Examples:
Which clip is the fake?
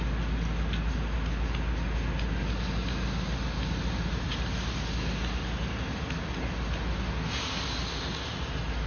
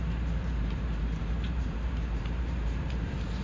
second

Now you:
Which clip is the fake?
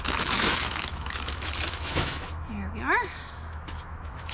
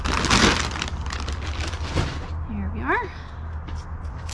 first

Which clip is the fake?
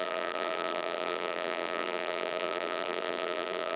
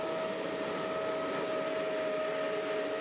first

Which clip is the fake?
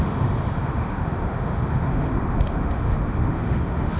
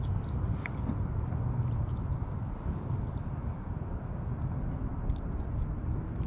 first